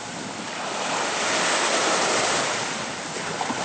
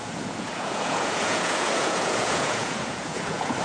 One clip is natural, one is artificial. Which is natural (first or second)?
first